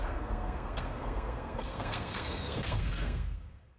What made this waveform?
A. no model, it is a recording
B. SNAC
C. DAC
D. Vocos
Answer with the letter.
B